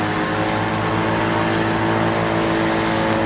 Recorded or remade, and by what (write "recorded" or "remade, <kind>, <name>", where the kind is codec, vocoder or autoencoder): recorded